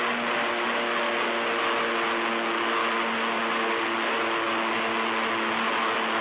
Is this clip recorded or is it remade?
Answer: recorded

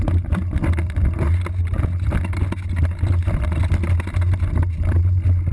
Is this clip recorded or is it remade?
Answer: recorded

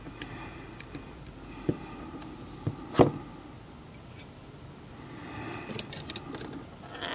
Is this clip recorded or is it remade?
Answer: recorded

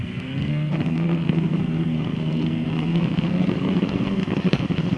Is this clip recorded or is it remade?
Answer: remade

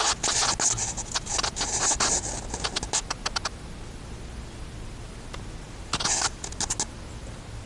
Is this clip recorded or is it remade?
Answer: recorded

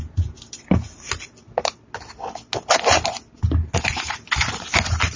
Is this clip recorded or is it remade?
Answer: recorded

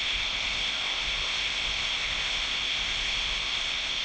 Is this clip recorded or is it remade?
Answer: remade